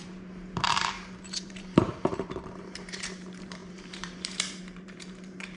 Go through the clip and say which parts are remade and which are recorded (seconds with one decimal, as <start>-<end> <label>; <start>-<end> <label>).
0.0-5.6 remade